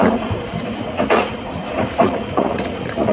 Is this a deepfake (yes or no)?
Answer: yes